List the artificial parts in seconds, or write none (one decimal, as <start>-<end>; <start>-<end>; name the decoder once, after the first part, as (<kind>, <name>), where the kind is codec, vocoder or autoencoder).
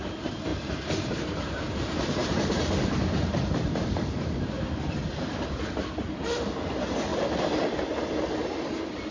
0.5-5.6 (vocoder, BigVGAN v2); 7.1-7.8